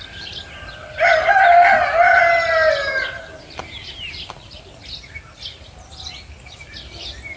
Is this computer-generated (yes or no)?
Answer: no